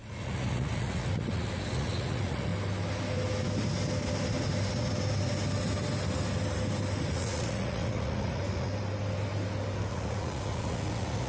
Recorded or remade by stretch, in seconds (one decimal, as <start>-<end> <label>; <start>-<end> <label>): 0.0-2.5 remade; 2.5-7.1 recorded; 7.1-8.7 remade; 8.7-9.9 recorded; 9.9-11.3 remade